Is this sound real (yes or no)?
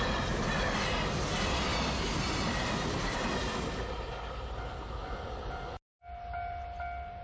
yes